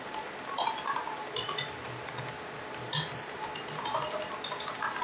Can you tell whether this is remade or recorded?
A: recorded